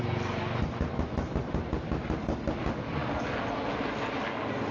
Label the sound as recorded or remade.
recorded